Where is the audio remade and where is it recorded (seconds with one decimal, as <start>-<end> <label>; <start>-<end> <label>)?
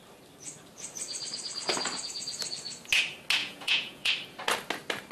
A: 0.0-3.4 recorded; 3.4-4.1 remade; 4.1-5.1 recorded